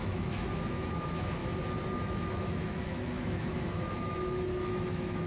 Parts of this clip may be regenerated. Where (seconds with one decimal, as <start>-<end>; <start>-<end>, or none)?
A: 0.0-1.4; 2.0-5.3